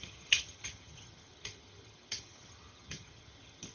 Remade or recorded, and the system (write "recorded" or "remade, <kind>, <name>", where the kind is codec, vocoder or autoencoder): remade, vocoder, HiFi-GAN